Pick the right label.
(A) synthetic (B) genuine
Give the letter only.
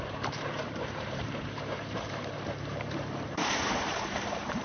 A